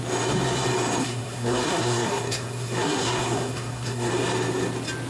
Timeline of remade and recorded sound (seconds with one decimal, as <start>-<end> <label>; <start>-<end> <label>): 0.0-1.0 recorded; 1.0-4.1 remade; 4.1-5.1 recorded